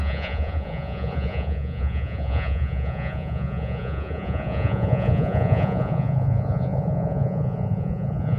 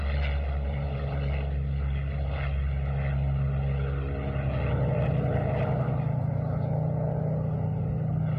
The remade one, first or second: first